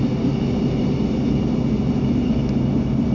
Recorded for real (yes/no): yes